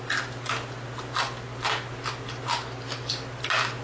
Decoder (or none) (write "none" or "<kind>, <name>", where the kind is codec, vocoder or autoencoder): none